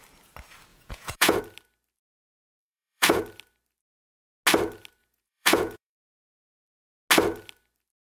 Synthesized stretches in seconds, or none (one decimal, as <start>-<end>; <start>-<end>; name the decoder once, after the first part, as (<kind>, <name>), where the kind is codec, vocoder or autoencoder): 0.7-1.4 (vocoder, Vocos); 2.4-3.2; 5.0-6.7